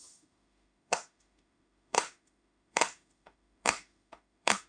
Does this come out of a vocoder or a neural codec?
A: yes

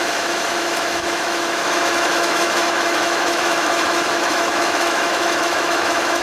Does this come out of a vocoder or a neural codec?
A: yes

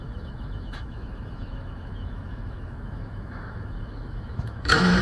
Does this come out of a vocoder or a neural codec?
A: yes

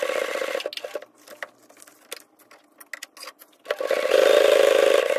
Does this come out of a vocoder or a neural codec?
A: no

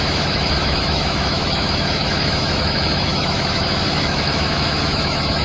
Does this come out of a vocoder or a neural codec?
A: yes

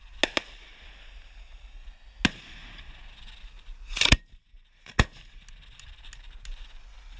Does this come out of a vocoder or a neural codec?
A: no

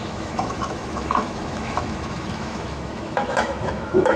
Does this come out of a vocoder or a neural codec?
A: yes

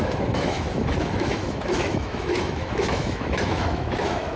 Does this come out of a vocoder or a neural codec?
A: yes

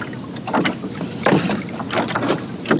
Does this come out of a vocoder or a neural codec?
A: no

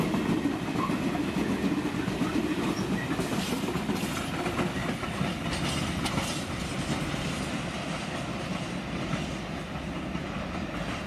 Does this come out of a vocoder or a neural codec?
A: no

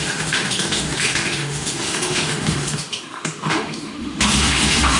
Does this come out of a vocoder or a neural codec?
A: yes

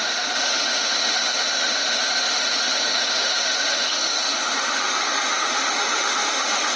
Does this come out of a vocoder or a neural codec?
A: yes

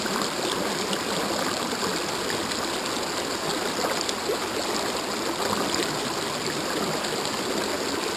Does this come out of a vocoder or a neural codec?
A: no